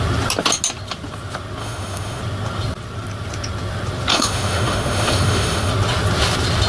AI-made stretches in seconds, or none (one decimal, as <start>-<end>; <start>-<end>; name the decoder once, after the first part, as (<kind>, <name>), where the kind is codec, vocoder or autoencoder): 1.6-2.2 (autoencoder, DAC-VAE); 4.1-5.7